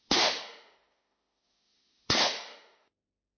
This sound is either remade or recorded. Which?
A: remade